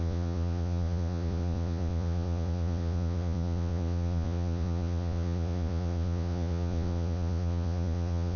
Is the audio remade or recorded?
remade